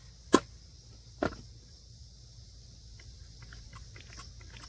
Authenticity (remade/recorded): recorded